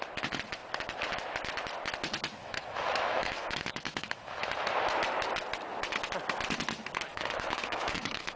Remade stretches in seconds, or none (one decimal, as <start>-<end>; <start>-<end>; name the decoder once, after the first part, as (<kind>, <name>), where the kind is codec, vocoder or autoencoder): 2.4-4.5 (autoencoder, DAC-VAE); 7.1-8.4